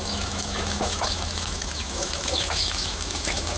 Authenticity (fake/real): fake